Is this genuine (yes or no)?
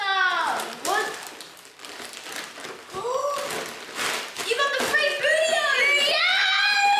yes